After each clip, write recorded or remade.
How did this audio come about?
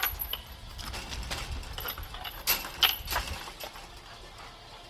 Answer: recorded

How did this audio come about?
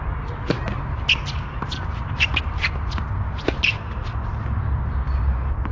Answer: recorded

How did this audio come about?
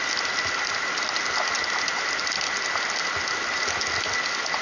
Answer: recorded